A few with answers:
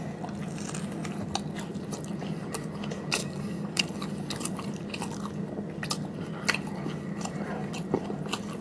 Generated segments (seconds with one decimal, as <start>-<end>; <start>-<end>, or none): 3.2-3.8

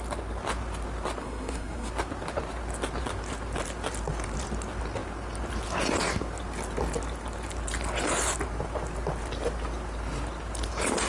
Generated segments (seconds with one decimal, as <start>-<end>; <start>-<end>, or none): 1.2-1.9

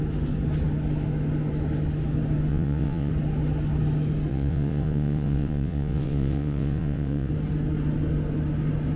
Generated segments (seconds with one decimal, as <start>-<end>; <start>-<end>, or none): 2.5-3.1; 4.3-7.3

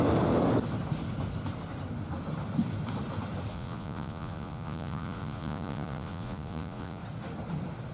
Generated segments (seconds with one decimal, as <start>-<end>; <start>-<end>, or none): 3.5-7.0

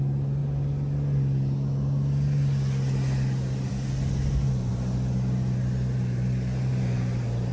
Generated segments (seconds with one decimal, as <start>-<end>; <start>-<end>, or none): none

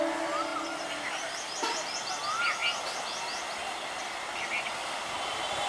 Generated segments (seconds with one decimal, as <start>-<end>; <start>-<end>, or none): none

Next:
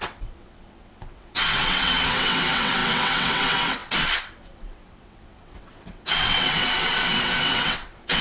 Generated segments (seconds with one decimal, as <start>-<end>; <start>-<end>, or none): 0.0-8.2

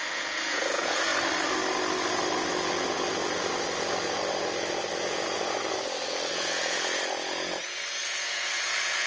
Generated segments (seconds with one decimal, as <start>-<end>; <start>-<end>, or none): 0.0-1.1; 5.0-5.6; 6.3-9.1